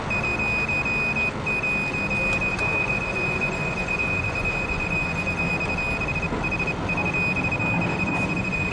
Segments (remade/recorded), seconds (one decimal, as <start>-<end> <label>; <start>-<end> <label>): 0.0-2.5 recorded; 2.5-5.5 remade; 5.5-7.9 recorded; 7.9-8.7 remade